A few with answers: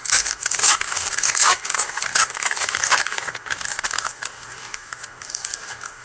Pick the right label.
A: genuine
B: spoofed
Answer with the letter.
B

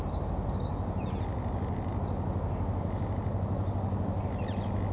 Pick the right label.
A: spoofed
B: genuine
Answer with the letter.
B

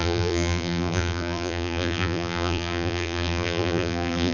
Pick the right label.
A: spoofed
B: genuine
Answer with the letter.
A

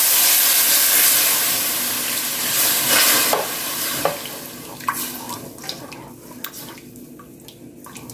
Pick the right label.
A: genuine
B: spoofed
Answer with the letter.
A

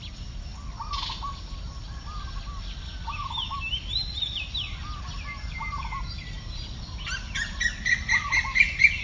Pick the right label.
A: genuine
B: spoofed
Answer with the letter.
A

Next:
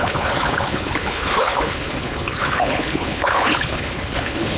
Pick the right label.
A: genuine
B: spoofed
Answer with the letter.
B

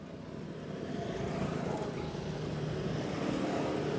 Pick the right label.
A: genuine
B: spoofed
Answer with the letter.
A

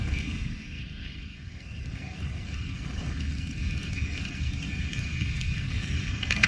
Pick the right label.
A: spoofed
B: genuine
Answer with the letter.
A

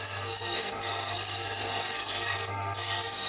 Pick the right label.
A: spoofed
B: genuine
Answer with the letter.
A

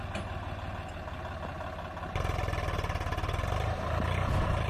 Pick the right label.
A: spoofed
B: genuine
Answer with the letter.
B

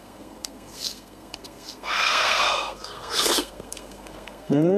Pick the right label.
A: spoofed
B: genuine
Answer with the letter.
A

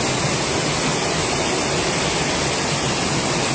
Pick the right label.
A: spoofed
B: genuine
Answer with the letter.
B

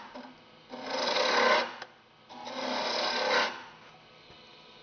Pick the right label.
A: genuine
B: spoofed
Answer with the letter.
A